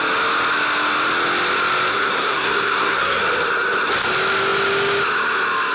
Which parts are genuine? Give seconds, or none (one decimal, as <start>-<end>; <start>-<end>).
0.0-1.9; 3.2-5.7